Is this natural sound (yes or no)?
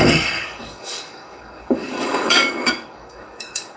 no